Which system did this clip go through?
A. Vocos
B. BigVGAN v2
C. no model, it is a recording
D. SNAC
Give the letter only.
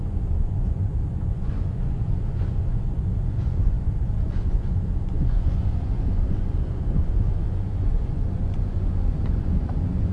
A